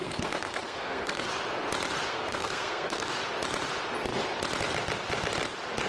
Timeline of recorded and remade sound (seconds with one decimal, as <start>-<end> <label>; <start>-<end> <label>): 0.0-1.3 remade; 1.3-2.1 recorded; 2.1-3.1 remade; 3.1-5.9 recorded